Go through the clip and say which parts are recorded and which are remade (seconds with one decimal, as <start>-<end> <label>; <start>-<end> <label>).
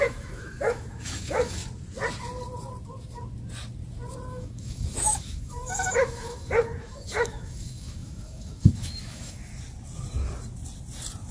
0.0-1.6 remade; 1.6-4.3 recorded; 4.3-9.5 remade; 9.5-11.3 recorded